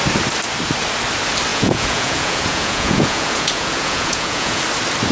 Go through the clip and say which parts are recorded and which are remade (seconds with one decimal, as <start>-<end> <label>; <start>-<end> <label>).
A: 0.0-1.5 recorded; 1.5-4.6 remade; 4.6-5.1 recorded